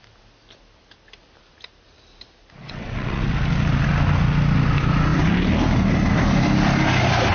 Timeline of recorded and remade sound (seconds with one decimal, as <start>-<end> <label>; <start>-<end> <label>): 0.0-2.6 recorded; 2.6-3.3 remade; 3.3-7.3 recorded